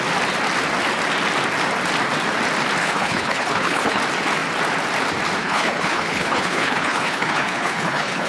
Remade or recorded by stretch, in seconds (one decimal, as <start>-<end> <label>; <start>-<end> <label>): 0.0-2.8 recorded; 2.8-4.0 remade; 4.0-5.4 recorded; 5.4-8.3 remade